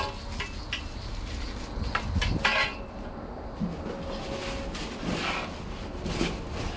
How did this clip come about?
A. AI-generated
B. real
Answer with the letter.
B